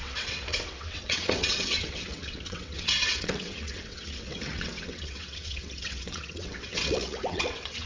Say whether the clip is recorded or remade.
remade